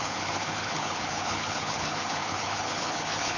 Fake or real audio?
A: fake